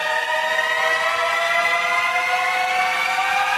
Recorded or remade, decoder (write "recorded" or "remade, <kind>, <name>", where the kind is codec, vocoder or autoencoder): recorded